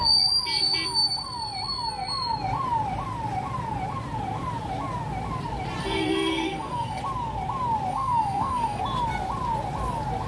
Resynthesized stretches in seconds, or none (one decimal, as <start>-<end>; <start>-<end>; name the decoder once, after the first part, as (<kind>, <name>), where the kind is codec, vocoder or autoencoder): 5.8-7.0 (codec, SNAC); 7.9-8.8